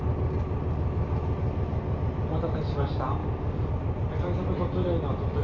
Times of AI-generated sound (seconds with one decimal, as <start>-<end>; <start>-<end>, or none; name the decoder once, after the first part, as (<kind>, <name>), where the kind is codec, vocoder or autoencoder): 3.2-3.7 (codec, DAC)